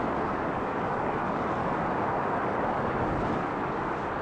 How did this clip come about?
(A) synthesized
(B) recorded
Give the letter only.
A